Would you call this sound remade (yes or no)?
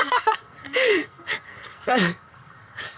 yes